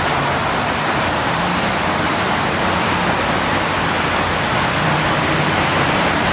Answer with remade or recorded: remade